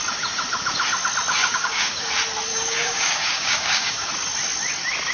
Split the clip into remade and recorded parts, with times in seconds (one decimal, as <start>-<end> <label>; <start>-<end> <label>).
0.0-1.4 recorded; 1.4-2.0 remade; 2.0-2.5 recorded; 2.5-4.1 remade; 4.1-5.1 recorded